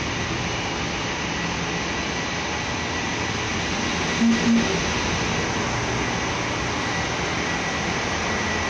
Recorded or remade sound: recorded